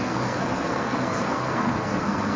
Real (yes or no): no